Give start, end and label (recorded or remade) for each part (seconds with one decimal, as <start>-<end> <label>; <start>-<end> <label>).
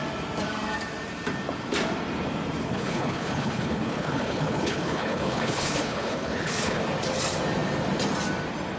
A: 0.0-2.6 recorded; 2.6-6.8 remade; 6.8-8.8 recorded